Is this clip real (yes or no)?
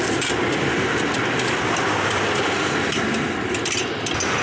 no